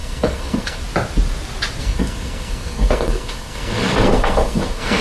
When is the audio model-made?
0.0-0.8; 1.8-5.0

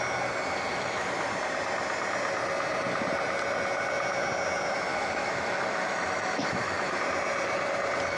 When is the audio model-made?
0.7-1.3; 4.9-7.0

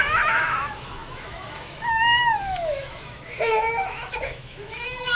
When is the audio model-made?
0.0-5.1